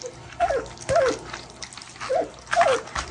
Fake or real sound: real